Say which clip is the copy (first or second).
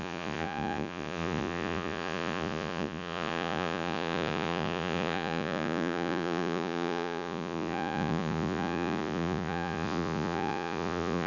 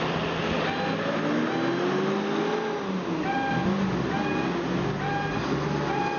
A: first